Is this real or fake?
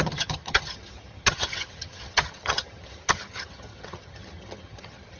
fake